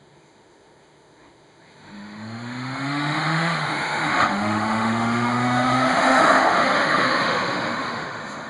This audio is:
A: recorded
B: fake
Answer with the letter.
B